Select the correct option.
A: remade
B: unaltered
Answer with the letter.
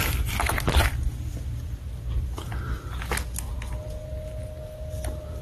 B